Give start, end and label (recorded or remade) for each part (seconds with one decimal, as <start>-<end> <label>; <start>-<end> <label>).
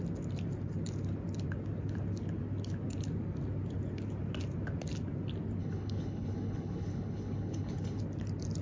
0.0-5.6 recorded; 5.6-8.0 remade; 8.0-8.6 recorded